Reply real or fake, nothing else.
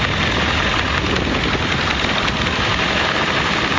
real